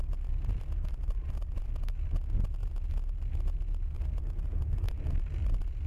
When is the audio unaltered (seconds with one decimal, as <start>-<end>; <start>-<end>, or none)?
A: 0.0-5.9

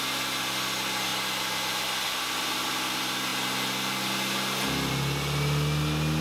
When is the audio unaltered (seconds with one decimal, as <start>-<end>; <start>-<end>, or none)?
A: 0.0-6.2

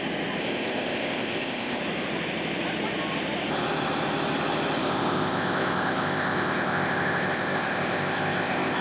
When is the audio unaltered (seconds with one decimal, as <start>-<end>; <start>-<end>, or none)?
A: 0.0-0.4; 1.8-4.8

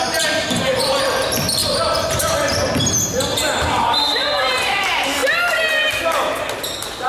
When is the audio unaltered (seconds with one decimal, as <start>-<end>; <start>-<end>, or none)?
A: 1.6-3.6; 5.2-7.1

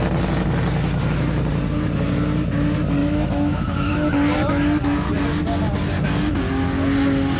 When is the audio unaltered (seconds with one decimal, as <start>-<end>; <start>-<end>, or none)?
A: 0.0-3.0; 3.9-7.4

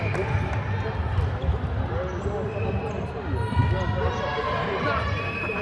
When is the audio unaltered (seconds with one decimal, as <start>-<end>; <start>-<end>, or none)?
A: 0.0-5.6